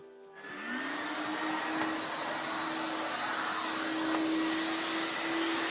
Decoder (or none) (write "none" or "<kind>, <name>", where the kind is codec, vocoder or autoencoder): none